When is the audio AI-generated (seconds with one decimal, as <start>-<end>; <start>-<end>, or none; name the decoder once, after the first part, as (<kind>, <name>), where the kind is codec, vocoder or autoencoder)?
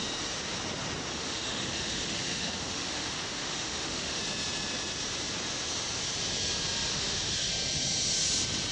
1.1-4.2 (autoencoder, DAC-VAE); 6.9-7.5